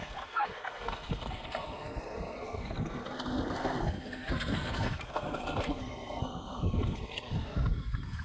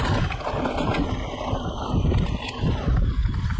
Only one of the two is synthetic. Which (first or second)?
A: first